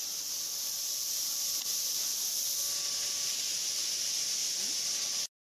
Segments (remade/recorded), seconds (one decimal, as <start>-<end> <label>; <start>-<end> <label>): 0.0-2.1 remade; 2.1-3.0 recorded; 3.0-4.4 remade; 4.4-5.4 recorded